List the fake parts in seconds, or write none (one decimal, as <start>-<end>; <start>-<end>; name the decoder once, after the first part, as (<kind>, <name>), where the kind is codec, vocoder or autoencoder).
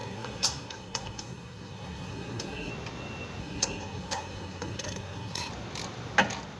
0.0-2.7 (codec, SNAC); 3.4-5.5